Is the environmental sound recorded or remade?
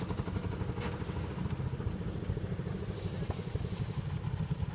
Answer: recorded